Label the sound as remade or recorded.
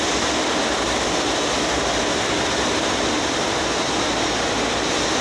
remade